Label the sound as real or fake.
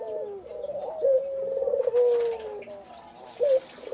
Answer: real